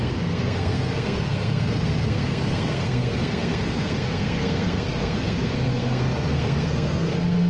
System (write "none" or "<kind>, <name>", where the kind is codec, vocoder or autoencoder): codec, SNAC